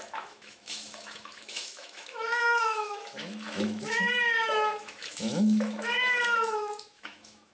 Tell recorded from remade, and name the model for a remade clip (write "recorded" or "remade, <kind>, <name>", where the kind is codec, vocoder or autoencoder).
remade, autoencoder, DAC-VAE